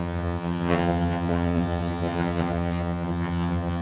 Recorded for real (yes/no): no